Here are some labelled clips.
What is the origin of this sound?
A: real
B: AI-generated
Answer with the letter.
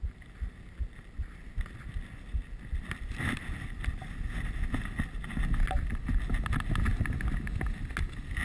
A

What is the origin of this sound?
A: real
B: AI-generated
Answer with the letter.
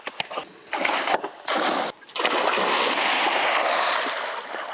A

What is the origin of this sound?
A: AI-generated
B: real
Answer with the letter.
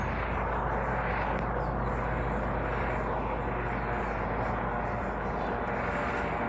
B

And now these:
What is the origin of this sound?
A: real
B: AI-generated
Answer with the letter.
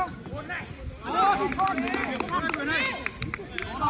A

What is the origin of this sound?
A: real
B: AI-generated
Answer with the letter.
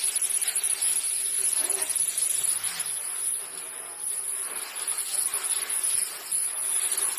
A